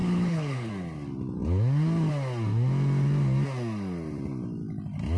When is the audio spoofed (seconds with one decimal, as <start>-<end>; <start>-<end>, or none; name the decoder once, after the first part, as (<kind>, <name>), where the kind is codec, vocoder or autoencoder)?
0.0-0.7 (codec, HILCodec)